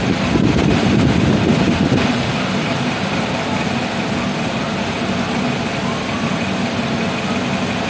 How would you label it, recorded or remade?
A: recorded